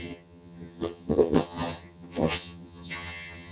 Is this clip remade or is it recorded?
remade